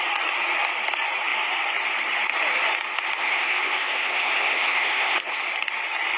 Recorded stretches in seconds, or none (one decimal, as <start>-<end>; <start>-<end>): 0.0-3.2; 5.4-6.2